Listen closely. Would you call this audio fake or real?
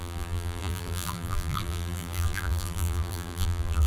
fake